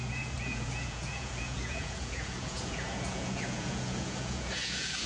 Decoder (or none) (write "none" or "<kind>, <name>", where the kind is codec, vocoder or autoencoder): vocoder, Vocos